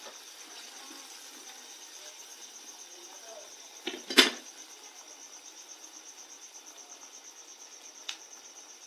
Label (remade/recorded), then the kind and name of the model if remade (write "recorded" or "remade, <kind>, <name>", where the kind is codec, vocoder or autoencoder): remade, vocoder, BigVGAN v2